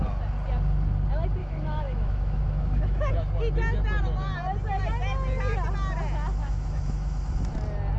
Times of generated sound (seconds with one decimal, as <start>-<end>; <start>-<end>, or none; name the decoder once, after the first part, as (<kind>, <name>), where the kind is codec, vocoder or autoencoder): 1.4-3.1 (autoencoder, DAC-VAE); 6.4-7.2